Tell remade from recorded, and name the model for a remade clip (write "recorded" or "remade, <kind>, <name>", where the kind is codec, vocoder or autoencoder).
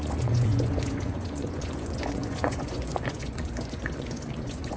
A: remade, vocoder, Vocos